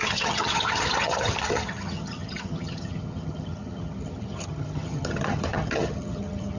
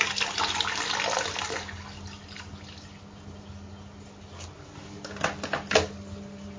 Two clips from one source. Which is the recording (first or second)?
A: second